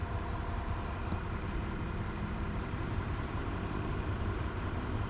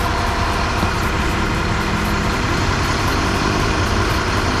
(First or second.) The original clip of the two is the second